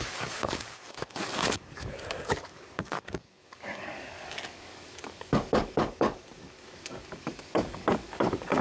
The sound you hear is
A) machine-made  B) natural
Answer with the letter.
A